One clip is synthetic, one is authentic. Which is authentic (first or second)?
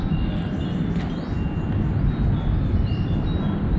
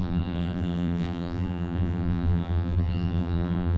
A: first